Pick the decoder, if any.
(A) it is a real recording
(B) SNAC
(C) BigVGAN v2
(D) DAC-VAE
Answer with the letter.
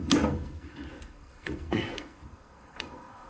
B